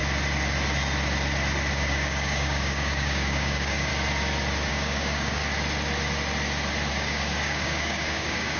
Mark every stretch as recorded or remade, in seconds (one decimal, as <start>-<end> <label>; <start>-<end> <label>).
0.0-1.7 recorded; 1.7-3.9 remade; 3.9-4.7 recorded; 4.7-5.4 remade; 5.4-6.9 recorded; 6.9-8.6 remade